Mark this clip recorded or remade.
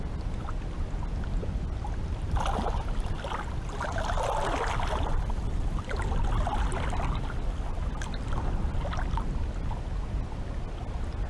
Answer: recorded